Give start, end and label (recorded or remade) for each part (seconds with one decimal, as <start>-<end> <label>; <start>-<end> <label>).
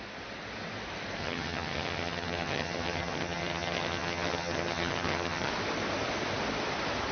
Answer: 0.0-1.2 recorded; 1.2-5.5 remade; 5.5-7.1 recorded